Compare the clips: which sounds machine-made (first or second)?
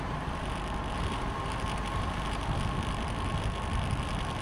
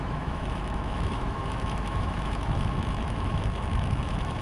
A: second